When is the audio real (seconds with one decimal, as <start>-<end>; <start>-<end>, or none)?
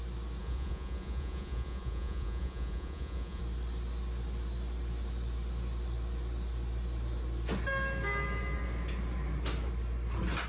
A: 0.0-0.4; 3.4-10.5